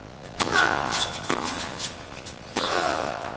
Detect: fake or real fake